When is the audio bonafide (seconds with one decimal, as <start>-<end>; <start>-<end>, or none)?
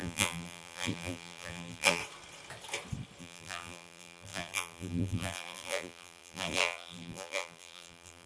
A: 2.0-3.2